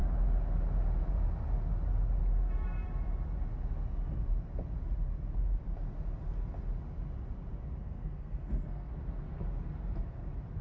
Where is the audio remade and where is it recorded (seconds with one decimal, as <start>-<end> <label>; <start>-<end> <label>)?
0.0-7.8 recorded; 7.8-8.9 remade; 8.9-10.6 recorded